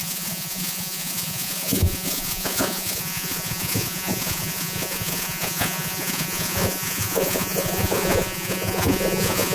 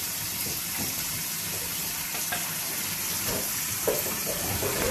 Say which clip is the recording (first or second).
second